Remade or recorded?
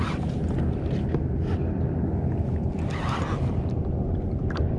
recorded